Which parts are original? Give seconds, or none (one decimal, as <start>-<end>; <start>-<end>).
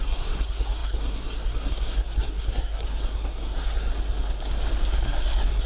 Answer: 3.9-4.9